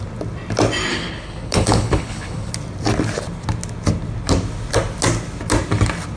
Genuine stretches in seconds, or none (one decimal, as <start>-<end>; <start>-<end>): 0.0-0.9; 2.5-6.2